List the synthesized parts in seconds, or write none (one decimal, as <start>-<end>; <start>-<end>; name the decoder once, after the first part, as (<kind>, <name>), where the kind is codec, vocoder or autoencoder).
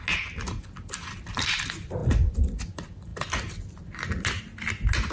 none